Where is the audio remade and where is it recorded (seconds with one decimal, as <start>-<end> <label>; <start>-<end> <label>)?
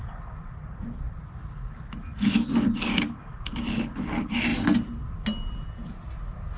0.0-6.6 recorded